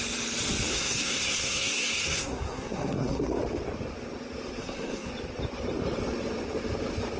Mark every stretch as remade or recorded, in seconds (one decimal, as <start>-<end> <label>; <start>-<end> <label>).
0.0-0.7 recorded; 0.7-3.4 remade; 3.4-4.6 recorded; 4.6-5.1 remade; 5.1-7.2 recorded